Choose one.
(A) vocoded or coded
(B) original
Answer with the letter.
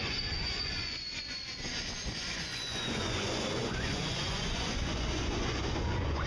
A